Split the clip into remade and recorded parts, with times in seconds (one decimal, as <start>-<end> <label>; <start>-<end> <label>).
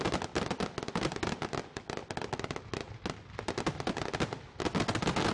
0.0-5.3 recorded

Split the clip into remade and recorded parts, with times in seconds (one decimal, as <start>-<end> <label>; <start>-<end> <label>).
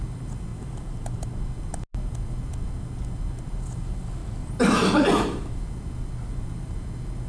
0.0-0.5 recorded; 0.5-1.4 remade; 1.4-4.2 recorded; 4.2-5.5 remade; 5.5-7.3 recorded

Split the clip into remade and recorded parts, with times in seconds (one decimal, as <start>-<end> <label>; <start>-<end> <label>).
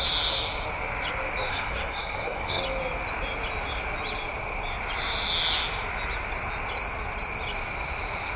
0.0-1.5 recorded; 1.5-2.6 remade; 2.6-8.4 recorded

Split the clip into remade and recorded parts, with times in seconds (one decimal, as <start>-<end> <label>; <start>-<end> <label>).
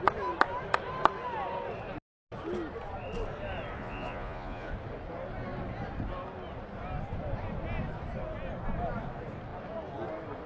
0.0-3.8 recorded; 3.8-4.7 remade; 4.7-10.5 recorded